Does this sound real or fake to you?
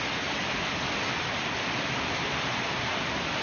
real